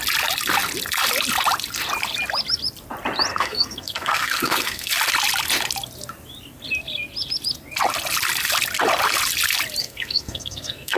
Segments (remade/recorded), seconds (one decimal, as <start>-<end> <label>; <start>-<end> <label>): 0.0-3.3 recorded; 3.3-4.9 remade; 4.9-9.8 recorded; 9.8-11.0 remade